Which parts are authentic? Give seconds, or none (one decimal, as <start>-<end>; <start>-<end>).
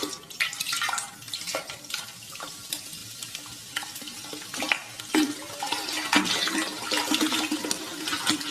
0.0-1.5; 2.2-8.5